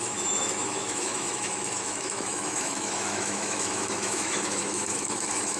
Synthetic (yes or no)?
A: yes